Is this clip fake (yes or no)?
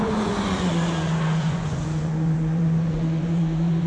yes